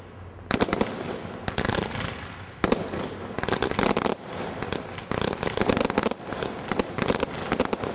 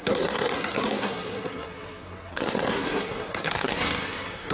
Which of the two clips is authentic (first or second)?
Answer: first